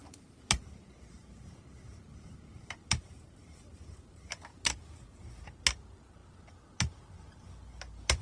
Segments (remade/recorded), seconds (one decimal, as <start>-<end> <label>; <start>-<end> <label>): 0.0-4.8 remade; 4.8-8.2 recorded